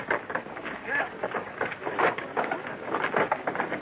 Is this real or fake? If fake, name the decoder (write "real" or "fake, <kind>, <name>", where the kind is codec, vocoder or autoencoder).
fake, codec, DAC